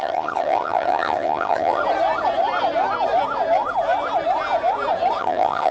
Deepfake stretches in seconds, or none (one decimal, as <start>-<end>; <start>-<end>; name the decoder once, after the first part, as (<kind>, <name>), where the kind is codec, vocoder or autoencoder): 0.0-1.8 (vocoder, HiFi-GAN); 5.2-5.7